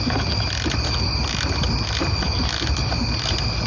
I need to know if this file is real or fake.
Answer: real